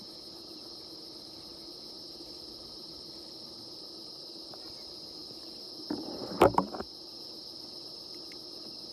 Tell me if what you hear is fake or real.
real